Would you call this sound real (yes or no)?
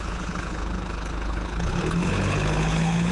no